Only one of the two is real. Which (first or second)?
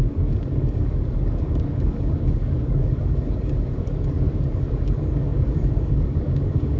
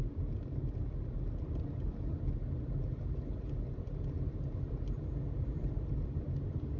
second